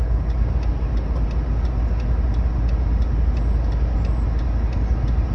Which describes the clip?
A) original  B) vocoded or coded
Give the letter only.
A